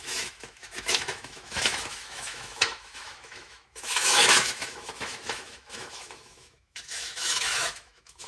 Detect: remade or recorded remade